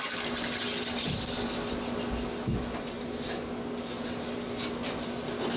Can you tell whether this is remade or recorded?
recorded